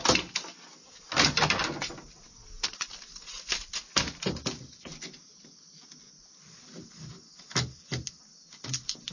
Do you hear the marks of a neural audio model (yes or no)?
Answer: no